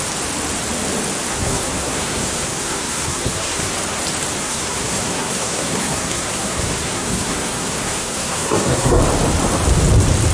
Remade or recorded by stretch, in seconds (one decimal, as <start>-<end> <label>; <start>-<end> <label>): 0.0-1.3 recorded; 1.3-3.7 remade; 3.7-4.4 recorded; 4.4-9.0 remade; 9.0-10.3 recorded